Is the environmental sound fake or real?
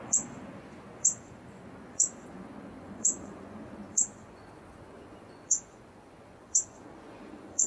fake